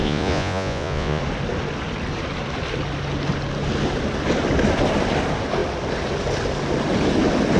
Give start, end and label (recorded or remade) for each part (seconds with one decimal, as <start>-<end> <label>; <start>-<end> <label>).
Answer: 0.0-1.2 remade; 1.2-7.6 recorded